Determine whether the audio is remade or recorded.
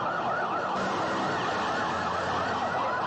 remade